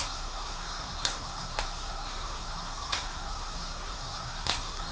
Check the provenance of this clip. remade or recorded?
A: remade